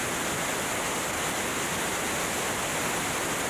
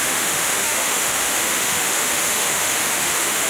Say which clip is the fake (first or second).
second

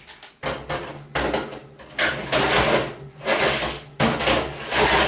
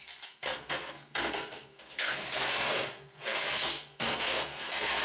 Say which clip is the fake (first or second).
second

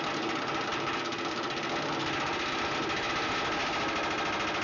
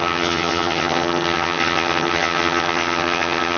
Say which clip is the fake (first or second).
second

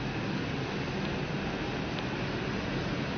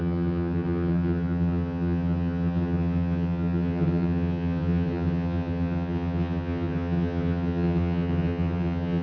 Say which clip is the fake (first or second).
second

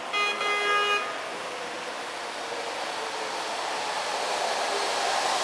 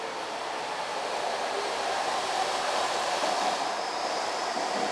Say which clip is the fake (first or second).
second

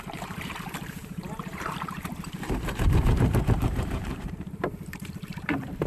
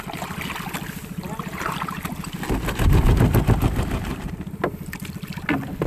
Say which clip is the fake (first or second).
first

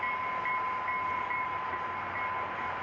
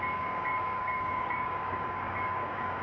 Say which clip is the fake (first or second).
second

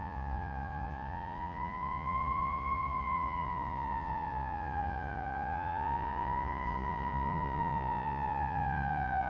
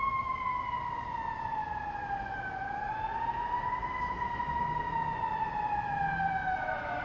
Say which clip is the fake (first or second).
first